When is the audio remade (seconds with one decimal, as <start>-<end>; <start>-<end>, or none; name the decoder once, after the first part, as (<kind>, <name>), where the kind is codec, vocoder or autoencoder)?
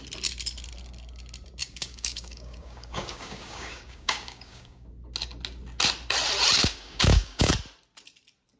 1.6-4.9 (codec, DAC); 6.6-7.5